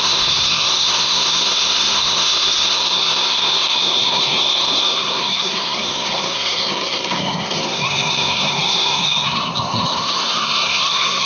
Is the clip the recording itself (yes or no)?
no